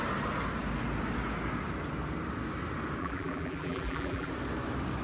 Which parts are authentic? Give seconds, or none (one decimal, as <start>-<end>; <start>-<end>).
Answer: 0.0-3.0; 4.3-5.0